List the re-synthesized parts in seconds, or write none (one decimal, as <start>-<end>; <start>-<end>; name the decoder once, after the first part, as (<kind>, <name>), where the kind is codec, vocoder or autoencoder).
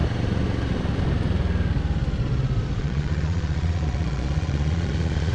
2.8-5.3 (vocoder, Vocos)